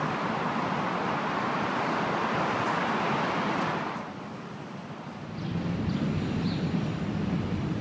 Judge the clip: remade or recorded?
recorded